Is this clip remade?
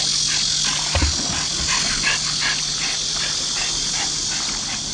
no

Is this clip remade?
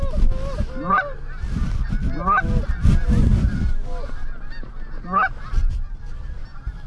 no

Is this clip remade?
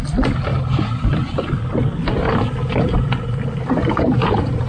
no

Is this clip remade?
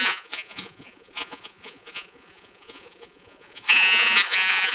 yes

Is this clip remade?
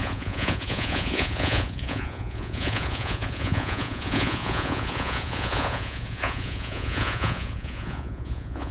yes